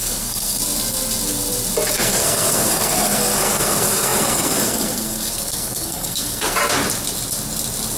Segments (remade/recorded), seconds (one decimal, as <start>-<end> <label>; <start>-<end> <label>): 0.0-0.6 remade; 0.6-1.9 recorded; 1.9-6.6 remade; 6.6-8.0 recorded